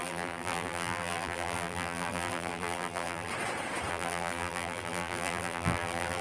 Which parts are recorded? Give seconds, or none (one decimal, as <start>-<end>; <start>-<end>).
3.3-3.9